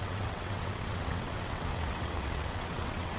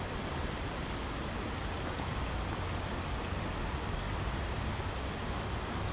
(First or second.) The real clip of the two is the second